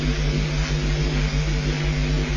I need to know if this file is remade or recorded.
recorded